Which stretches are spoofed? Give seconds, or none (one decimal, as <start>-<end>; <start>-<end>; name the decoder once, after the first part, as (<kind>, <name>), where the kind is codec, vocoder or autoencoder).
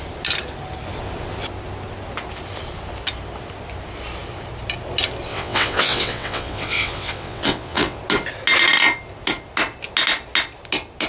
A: 5.3-8.0 (vocoder, WaveNeXt)